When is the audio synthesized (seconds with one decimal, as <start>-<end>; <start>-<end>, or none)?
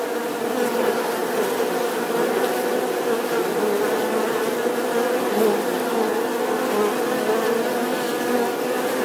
none